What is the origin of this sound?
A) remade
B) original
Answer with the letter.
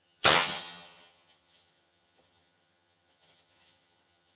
A